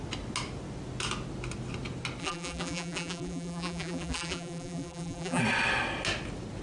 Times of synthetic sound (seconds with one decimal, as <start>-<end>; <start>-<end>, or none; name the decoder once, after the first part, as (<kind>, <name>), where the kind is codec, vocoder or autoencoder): 2.2-5.4 (vocoder, BigVGAN v2)